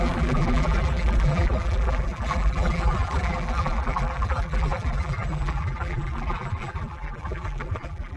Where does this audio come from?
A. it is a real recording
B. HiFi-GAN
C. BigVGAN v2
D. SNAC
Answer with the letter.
C